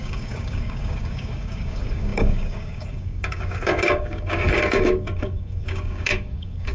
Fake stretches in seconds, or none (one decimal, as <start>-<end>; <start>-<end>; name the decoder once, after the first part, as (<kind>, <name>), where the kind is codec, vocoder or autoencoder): 0.0-6.7 (codec, DAC)